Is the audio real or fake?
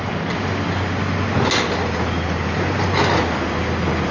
real